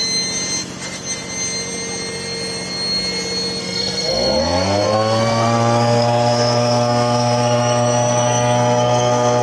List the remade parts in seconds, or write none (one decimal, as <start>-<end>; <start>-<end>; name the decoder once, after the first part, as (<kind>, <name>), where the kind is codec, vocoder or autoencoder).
3.6-9.4 (codec, SNAC)

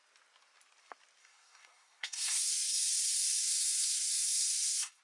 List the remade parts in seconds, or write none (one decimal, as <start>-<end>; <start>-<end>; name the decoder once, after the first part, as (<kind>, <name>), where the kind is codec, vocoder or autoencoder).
1.2-2.8 (codec, SNAC); 3.4-5.0

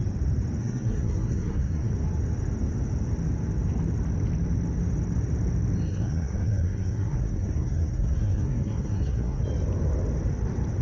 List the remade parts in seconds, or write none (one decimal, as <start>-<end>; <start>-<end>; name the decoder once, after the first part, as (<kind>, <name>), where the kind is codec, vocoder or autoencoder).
0.6-1.9 (codec, SNAC); 5.8-9.4